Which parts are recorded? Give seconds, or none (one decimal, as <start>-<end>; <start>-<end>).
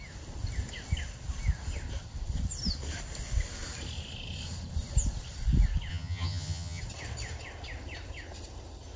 0.0-5.9; 6.8-9.0